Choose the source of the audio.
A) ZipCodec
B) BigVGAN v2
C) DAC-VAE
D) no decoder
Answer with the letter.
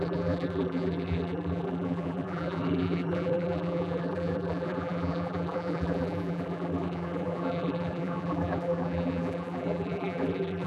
B